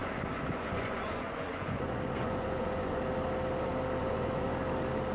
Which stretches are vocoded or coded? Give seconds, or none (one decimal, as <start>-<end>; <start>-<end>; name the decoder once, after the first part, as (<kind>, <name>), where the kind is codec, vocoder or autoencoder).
0.0-3.0 (vocoder, Vocos); 4.0-4.6

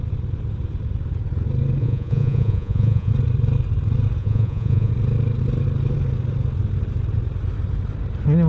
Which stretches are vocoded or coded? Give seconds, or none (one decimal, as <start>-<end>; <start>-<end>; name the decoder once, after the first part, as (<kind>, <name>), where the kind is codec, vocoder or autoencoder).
1.8-3.1 (vocoder, Vocos); 4.2-4.9

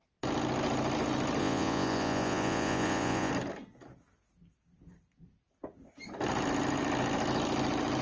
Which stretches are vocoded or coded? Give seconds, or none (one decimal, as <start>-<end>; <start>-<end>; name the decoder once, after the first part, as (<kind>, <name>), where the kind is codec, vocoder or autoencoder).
1.4-3.3 (vocoder, Vocos)